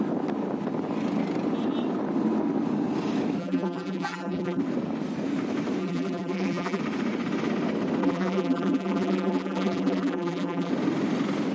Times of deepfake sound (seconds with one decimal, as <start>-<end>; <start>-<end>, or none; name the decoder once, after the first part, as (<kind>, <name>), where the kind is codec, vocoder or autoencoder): 3.4-4.6 (vocoder, BigVGAN v2); 5.8-6.8; 8.0-10.7

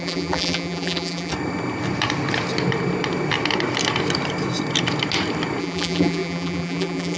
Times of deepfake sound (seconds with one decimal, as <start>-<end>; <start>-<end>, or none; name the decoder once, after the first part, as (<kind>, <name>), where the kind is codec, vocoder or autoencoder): 0.0-1.3 (vocoder, BigVGAN v2); 5.6-7.2

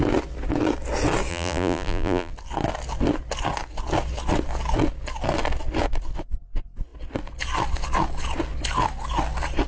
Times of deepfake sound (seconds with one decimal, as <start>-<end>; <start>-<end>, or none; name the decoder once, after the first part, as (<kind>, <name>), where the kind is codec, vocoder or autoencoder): 1.3-2.3 (vocoder, BigVGAN v2)

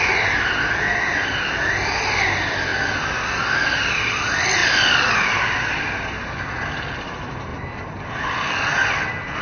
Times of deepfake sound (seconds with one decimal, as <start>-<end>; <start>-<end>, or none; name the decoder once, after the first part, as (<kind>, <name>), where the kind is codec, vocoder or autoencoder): none

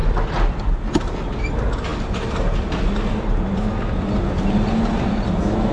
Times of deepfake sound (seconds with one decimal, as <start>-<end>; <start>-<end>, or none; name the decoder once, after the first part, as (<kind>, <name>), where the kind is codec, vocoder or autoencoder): 0.0-0.5 (vocoder, BigVGAN v2)

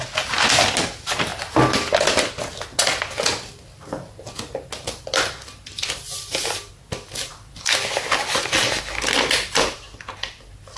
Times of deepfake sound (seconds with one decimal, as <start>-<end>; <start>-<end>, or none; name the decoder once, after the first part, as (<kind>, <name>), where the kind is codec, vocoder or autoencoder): 7.3-8.2 (vocoder, BigVGAN v2)

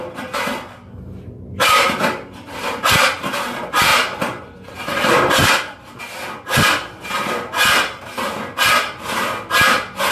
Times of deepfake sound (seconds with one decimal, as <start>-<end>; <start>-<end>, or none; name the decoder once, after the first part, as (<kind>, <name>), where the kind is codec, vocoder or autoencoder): 3.9-6.0 (vocoder, BigVGAN v2)

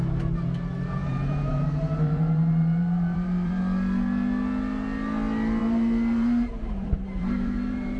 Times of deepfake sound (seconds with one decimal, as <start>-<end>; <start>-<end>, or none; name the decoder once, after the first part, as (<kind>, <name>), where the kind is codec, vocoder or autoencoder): 1.0-3.6 (vocoder, BigVGAN v2); 5.6-8.0